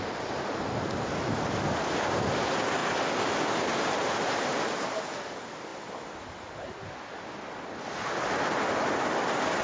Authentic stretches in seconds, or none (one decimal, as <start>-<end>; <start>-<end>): 0.0-9.6